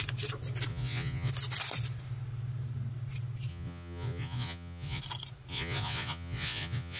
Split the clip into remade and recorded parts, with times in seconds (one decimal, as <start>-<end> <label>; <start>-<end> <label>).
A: 0.0-0.7 recorded; 0.7-1.3 remade; 1.3-3.5 recorded; 3.5-5.0 remade; 5.0-5.5 recorded; 5.5-7.0 remade